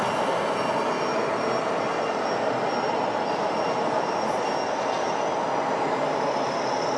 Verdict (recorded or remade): recorded